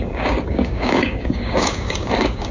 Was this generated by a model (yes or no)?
yes